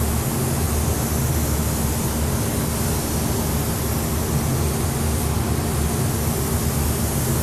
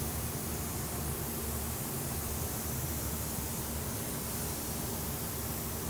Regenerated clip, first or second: second